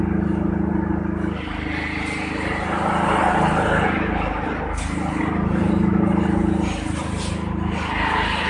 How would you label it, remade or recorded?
recorded